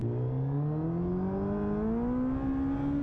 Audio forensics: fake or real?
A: real